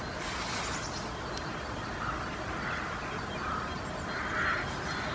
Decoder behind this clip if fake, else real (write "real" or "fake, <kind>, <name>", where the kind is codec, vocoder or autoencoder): real